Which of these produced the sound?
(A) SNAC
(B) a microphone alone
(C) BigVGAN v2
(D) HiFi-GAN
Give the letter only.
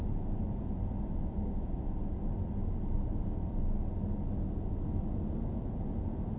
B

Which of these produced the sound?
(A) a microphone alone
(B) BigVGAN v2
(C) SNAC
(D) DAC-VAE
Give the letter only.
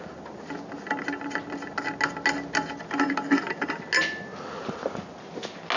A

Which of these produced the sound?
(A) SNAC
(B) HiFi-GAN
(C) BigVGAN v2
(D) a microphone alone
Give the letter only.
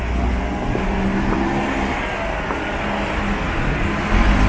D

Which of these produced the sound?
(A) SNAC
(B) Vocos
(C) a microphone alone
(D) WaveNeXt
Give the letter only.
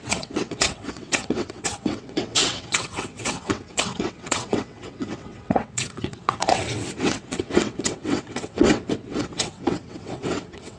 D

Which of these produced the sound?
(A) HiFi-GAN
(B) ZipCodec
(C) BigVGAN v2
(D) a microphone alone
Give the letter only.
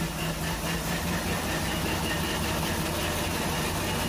D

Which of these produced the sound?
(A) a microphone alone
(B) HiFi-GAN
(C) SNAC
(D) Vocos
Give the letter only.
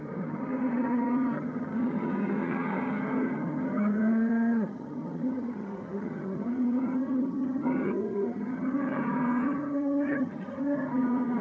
B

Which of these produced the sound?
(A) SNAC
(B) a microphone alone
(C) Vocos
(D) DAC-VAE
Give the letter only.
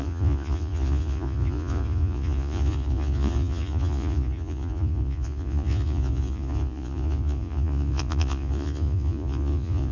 C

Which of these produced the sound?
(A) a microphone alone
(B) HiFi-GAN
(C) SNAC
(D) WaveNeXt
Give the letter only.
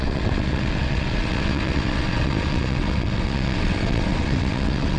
D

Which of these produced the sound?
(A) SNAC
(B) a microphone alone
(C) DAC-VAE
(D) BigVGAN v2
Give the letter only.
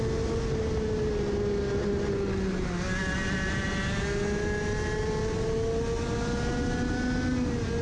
B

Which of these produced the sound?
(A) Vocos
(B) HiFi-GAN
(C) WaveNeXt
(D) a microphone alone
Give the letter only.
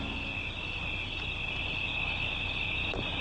D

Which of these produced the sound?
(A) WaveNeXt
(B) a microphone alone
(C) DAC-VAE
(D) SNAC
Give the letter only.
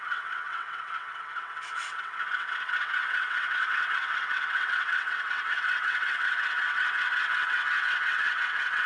A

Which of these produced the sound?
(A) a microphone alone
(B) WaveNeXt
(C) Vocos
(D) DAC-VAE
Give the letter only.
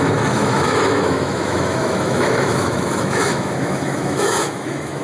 D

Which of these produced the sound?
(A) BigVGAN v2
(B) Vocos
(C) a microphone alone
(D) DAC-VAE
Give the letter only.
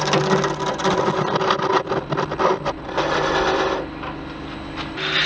C